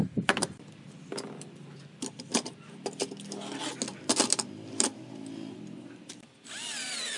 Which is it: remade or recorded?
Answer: recorded